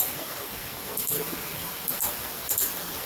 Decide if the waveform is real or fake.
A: fake